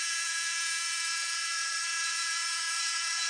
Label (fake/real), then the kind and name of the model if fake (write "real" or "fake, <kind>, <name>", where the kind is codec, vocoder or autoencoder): fake, vocoder, Vocos